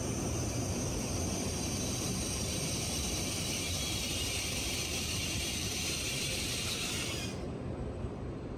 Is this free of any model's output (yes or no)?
no